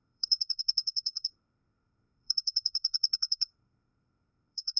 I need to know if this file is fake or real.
fake